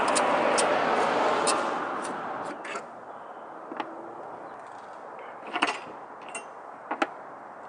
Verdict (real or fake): real